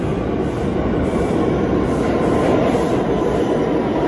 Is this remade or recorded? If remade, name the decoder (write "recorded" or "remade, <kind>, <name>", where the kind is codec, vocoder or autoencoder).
recorded